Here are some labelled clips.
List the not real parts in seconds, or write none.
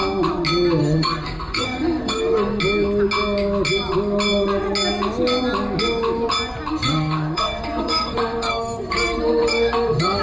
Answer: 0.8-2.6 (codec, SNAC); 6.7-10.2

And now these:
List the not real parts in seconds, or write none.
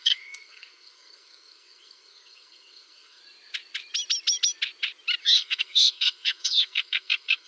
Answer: 0.0-3.2 (codec, SNAC); 5.2-7.5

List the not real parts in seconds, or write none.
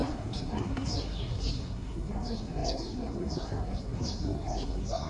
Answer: 0.0-5.1 (codec, SNAC)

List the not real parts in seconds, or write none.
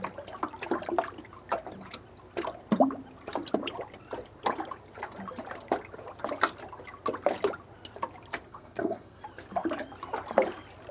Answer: 8.5-9.2 (codec, SNAC)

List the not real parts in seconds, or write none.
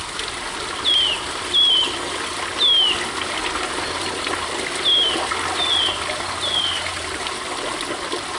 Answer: none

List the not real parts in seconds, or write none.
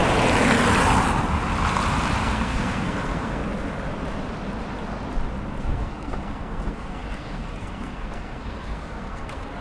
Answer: 2.2-3.4 (codec, SNAC); 5.6-9.6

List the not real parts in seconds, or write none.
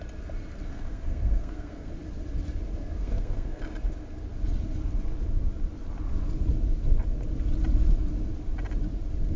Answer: 0.7-1.9 (codec, SNAC); 3.0-3.6